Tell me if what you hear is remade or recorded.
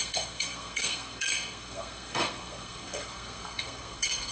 remade